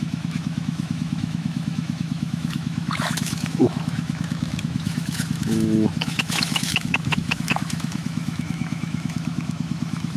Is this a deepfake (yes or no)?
yes